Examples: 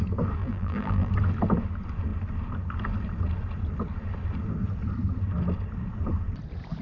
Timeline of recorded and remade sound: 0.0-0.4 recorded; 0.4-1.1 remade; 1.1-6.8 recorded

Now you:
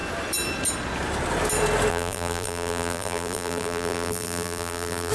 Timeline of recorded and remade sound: 0.0-1.9 recorded; 1.9-5.1 remade

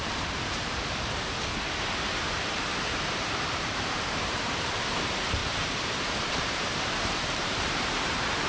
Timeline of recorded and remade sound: 0.0-2.4 recorded; 2.4-5.4 remade; 5.4-6.0 recorded; 6.0-8.5 remade

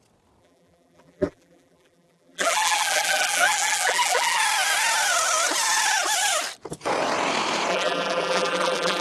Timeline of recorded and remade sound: 0.0-0.4 recorded; 0.4-4.4 remade; 4.4-7.7 recorded; 7.7-9.0 remade

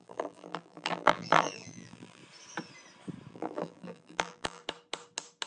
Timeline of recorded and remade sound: 0.0-2.2 remade; 2.2-3.3 recorded; 3.3-4.6 remade; 4.6-5.5 recorded